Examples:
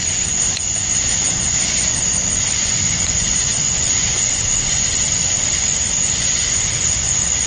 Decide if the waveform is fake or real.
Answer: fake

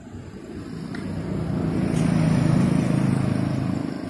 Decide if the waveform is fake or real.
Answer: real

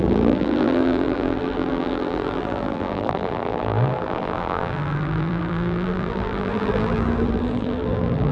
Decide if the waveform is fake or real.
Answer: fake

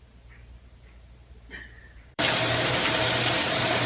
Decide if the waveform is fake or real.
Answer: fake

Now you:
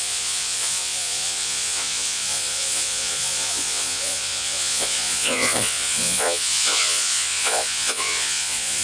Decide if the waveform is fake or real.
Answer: fake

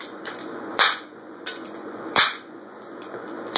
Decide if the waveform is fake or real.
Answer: fake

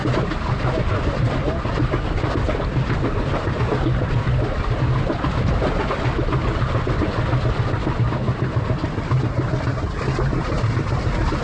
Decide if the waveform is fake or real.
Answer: real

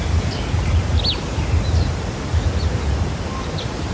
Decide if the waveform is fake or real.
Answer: real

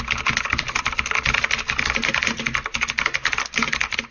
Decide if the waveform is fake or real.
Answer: real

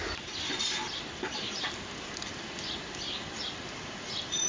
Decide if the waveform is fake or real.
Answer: real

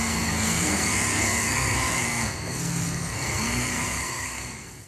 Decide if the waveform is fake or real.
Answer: fake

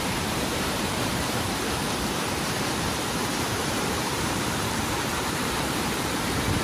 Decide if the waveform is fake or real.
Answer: fake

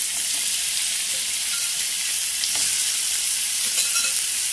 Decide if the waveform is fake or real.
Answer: real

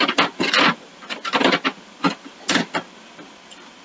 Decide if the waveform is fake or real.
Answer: real